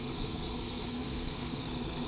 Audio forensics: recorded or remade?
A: remade